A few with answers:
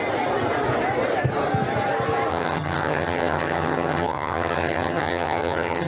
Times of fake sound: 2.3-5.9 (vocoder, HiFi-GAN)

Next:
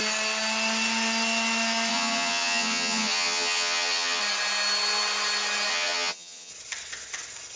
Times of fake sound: 1.9-4.2 (vocoder, HiFi-GAN); 5.7-6.5